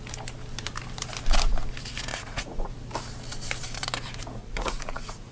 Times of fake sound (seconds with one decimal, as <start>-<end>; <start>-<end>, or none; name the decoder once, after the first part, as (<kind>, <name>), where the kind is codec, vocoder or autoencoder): 2.1-2.7 (vocoder, Vocos); 4.4-5.3